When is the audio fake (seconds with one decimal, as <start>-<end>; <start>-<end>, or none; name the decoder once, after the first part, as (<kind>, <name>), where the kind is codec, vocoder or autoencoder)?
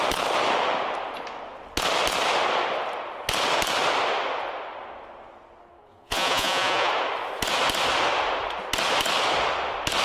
5.9-6.9 (vocoder, Vocos)